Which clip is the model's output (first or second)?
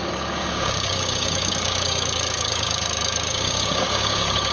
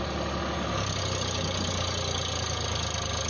first